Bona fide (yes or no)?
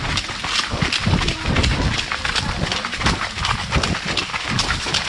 yes